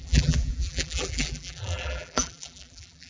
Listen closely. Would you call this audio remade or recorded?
remade